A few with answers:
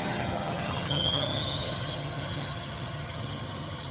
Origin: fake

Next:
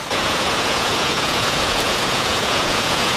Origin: fake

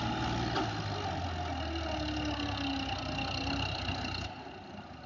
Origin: real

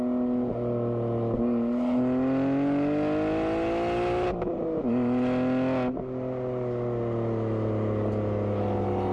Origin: real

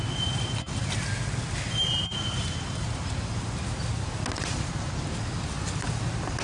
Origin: real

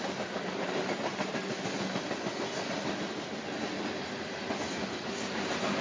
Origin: real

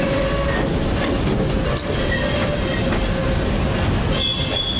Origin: real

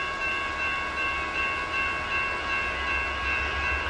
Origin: real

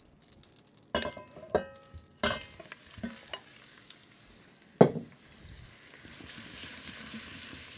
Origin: real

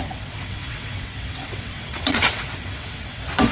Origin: fake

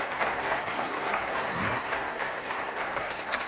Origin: fake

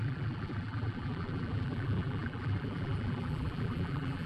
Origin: fake